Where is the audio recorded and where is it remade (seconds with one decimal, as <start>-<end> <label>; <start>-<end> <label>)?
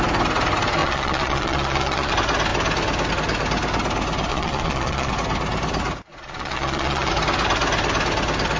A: 0.0-0.8 recorded; 0.8-2.1 remade; 2.1-4.3 recorded; 4.3-5.1 remade; 5.1-6.1 recorded; 6.1-7.1 remade; 7.1-8.6 recorded